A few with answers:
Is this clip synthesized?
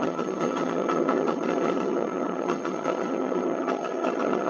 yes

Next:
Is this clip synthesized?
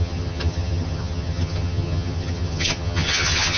yes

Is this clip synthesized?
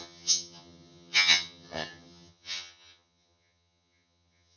yes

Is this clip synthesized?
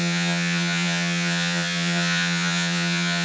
yes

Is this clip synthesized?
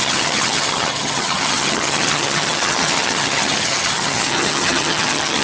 yes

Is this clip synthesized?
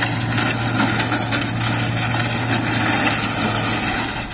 no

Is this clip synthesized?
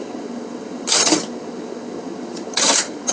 yes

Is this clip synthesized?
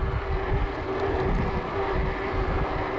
no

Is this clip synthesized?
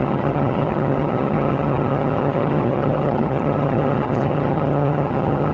yes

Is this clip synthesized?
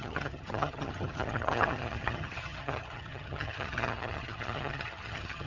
yes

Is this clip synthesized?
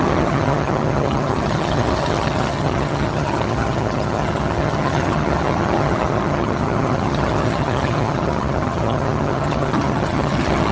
yes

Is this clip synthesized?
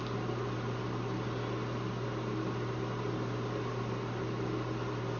no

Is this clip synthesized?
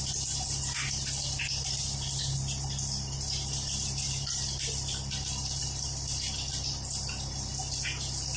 no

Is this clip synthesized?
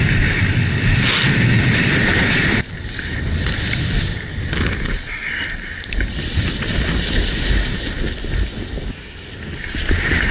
no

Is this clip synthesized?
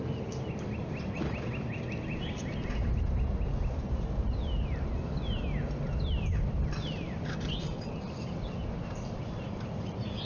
no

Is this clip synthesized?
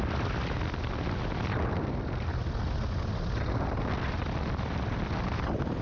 no